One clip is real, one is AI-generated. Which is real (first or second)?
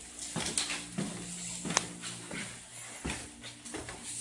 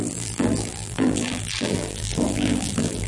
first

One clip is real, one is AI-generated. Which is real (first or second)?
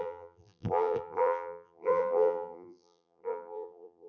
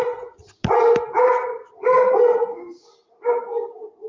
second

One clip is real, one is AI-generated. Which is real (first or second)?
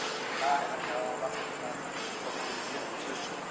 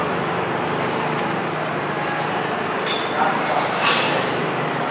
first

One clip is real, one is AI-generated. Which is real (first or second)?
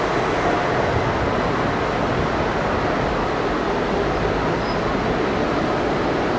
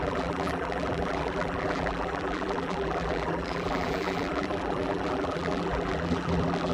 first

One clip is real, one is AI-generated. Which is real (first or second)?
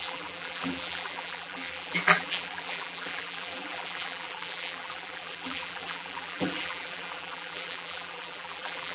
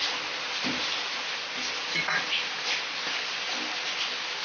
second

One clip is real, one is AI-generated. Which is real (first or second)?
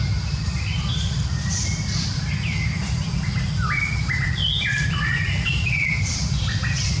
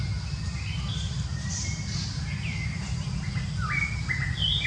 second